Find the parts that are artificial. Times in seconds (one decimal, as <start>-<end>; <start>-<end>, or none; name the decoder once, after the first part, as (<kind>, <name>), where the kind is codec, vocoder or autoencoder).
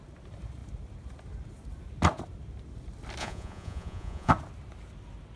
3.2-4.3 (vocoder, Vocos)